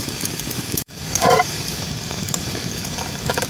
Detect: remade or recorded remade